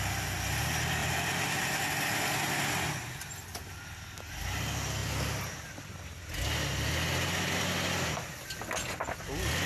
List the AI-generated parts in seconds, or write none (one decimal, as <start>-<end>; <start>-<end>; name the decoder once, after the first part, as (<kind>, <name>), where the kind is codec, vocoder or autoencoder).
1.0-2.5 (vocoder, BigVGAN v2)